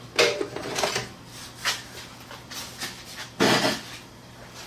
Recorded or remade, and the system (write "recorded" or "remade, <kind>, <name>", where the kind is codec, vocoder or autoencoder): recorded